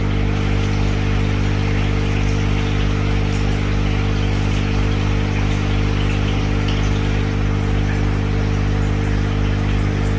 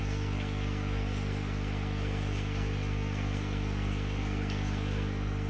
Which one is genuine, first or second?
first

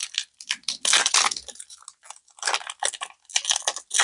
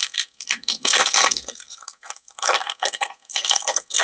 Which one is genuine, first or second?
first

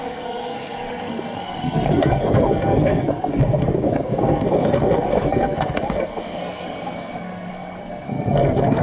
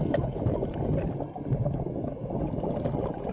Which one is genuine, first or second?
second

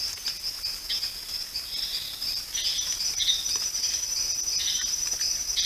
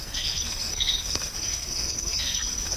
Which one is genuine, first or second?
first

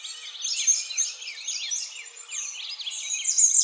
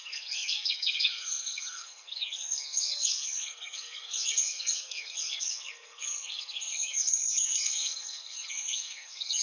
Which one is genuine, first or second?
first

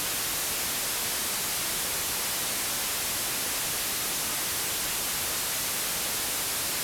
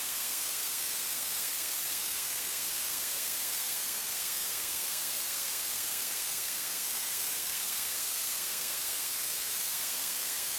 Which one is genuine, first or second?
first